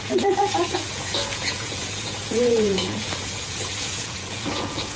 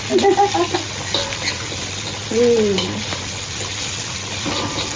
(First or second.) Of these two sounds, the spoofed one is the first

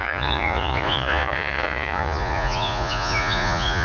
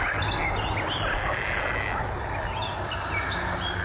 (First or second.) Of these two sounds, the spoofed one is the first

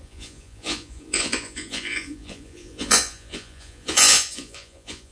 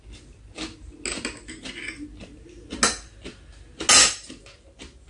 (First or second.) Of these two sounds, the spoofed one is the first